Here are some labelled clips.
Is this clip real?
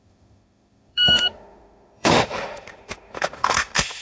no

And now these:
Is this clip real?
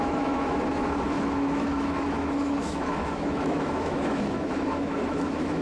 no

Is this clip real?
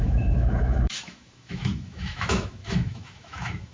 no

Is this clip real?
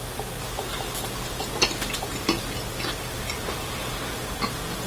yes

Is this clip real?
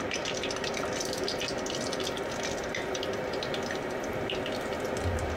yes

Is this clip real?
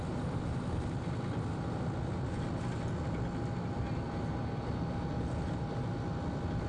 yes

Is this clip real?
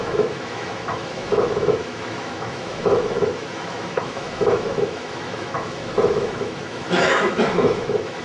no